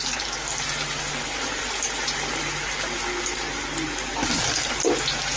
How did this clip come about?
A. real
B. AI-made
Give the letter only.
A